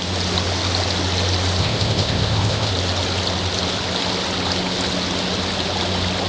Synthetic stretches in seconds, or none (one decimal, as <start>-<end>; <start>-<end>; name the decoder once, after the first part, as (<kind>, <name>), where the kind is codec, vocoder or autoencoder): 1.6-2.7 (codec, ZipCodec)